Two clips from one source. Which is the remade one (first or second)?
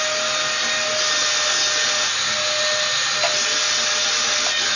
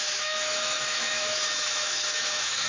second